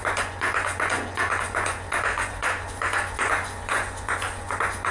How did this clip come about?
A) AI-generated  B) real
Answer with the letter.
A